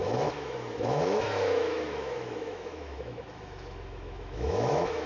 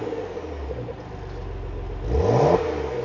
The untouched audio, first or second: second